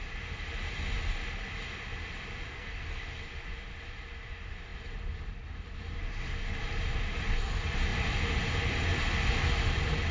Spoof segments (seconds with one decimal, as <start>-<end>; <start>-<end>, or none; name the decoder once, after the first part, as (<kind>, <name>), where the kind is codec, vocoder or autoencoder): 2.5-3.0 (codec, SNAC)